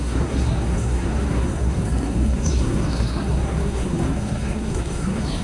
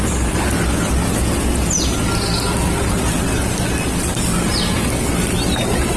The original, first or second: second